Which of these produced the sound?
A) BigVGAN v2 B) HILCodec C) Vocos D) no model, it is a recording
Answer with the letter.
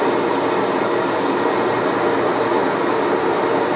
D